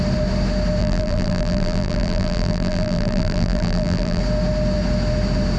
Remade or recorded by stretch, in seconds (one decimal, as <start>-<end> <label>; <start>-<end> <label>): 0.0-0.8 recorded; 0.8-4.2 remade; 4.2-5.6 recorded